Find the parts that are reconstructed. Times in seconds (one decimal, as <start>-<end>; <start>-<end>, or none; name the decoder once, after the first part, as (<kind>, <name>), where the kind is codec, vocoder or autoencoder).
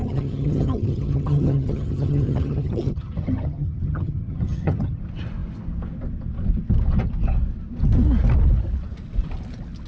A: 0.0-5.0 (vocoder, HiFi-GAN)